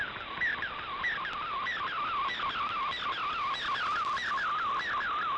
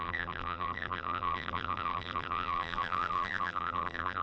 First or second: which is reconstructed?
second